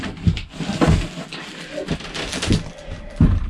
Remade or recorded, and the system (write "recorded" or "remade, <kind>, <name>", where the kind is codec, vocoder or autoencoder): recorded